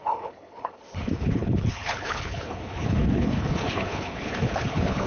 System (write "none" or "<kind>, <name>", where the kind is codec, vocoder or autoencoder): codec, HILCodec